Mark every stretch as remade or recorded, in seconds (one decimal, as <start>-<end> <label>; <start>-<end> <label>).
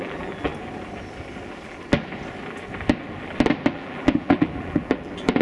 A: 0.0-0.5 remade; 0.5-3.7 recorded; 3.7-5.4 remade